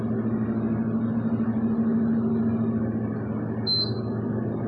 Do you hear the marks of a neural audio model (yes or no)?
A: no